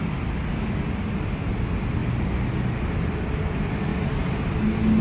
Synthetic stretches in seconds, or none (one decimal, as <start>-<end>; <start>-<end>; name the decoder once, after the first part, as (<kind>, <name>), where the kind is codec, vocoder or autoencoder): none